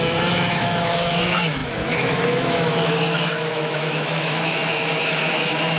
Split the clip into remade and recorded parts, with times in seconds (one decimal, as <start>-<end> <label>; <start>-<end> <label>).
0.0-5.8 remade